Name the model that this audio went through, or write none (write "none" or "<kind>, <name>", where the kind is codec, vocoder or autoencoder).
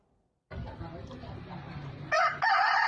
none